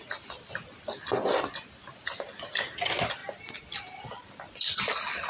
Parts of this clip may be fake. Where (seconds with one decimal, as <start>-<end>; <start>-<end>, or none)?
none